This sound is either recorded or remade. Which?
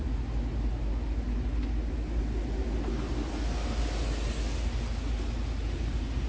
recorded